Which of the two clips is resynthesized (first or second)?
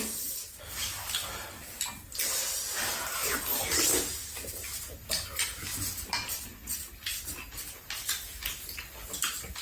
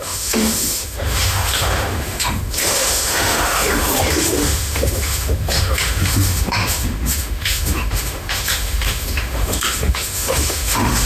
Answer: second